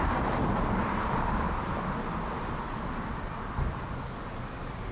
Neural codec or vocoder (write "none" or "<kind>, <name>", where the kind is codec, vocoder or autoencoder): none